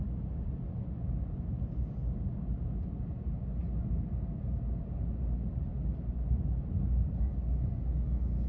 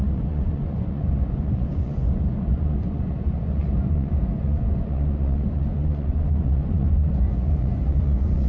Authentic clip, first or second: first